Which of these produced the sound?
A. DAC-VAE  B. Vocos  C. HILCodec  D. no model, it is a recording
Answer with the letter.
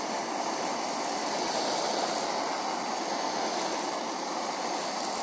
D